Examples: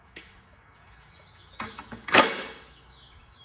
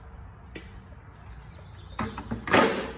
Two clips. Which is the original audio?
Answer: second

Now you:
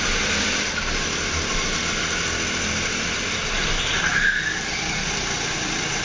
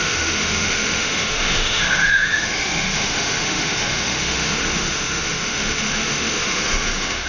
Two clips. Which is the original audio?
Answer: first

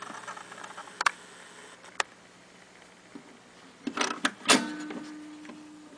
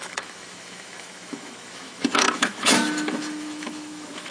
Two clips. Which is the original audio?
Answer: first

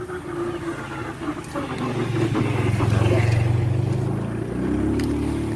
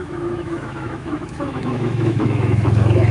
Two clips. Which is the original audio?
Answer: first